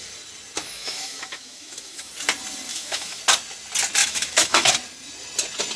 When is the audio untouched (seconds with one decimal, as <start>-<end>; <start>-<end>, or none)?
0.0-0.6; 2.1-2.7; 3.2-4.0; 4.7-5.8